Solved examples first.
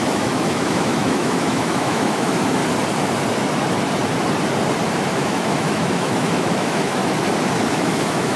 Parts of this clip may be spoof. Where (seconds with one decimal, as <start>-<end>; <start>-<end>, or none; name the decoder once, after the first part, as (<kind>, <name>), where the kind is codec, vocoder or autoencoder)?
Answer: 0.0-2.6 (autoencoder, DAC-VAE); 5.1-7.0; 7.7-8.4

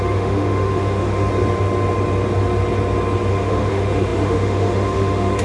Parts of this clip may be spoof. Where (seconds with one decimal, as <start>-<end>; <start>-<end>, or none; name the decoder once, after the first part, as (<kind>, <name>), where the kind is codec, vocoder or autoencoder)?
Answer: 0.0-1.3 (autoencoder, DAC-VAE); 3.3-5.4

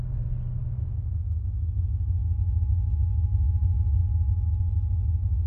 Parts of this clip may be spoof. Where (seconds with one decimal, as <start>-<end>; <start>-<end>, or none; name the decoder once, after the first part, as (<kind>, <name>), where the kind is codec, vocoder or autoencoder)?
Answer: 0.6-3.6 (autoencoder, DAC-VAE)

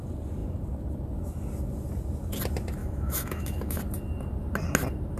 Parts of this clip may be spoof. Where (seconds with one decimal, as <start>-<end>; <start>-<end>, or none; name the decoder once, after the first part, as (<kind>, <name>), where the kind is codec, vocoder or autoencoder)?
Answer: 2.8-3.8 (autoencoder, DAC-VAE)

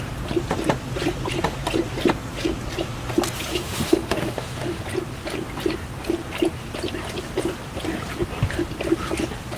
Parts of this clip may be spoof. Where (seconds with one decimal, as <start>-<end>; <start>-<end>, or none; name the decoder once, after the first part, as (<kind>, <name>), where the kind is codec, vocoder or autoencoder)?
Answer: 3.5-4.8 (autoencoder, DAC-VAE)

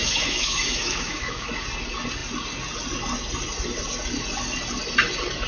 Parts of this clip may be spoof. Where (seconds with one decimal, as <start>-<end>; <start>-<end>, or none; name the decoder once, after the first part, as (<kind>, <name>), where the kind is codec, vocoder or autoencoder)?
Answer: 0.0-1.5 (autoencoder, DAC-VAE)